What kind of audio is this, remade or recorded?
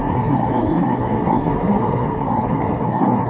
remade